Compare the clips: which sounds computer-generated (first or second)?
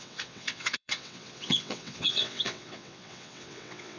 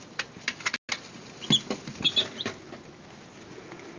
first